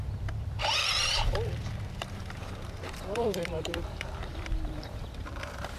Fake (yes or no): yes